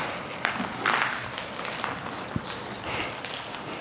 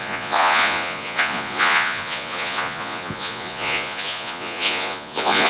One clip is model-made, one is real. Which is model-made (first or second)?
second